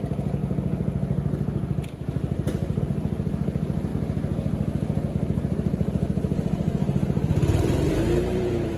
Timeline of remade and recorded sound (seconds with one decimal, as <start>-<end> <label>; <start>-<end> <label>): 0.0-0.4 remade; 0.4-2.8 recorded; 2.8-3.9 remade; 3.9-5.1 recorded; 5.1-8.8 remade